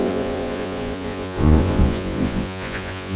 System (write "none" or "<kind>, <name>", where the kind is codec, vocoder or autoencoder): vocoder, Vocos